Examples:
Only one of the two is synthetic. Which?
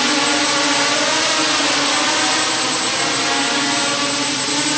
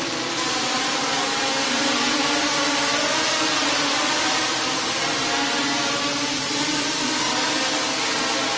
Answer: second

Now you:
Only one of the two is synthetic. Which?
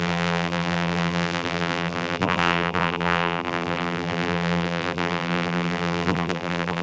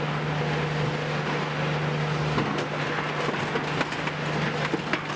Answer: first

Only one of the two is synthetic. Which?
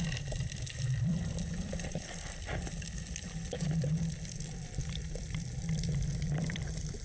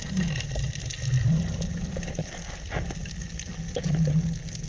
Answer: first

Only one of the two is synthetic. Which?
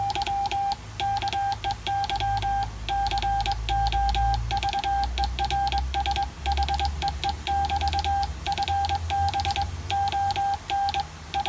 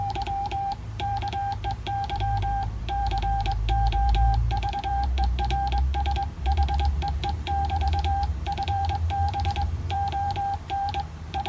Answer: second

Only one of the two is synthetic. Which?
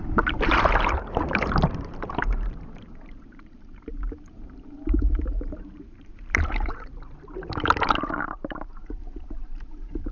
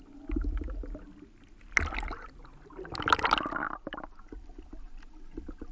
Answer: first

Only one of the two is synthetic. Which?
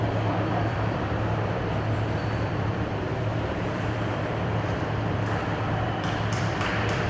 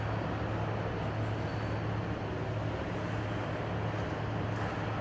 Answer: first